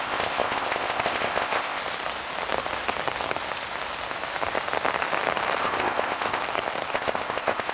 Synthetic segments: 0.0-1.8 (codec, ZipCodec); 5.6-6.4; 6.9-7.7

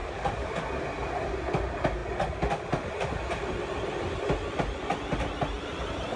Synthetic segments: 0.0-0.8 (codec, DAC)

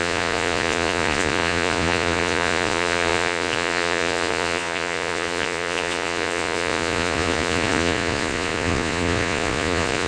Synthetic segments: 0.0-10.1 (vocoder, Vocos)